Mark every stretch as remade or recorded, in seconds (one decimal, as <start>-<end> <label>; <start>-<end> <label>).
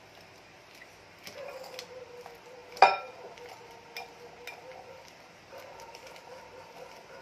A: 0.0-7.2 recorded